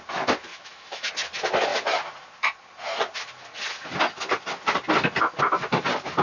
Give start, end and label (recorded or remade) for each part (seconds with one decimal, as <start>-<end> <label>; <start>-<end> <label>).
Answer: 0.0-0.5 recorded; 0.5-1.1 remade; 1.1-6.2 recorded